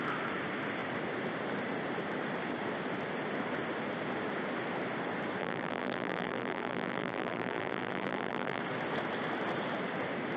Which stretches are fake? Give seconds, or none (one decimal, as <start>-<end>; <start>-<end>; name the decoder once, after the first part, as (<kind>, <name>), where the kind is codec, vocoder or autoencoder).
5.4-8.6 (vocoder, BigVGAN v2)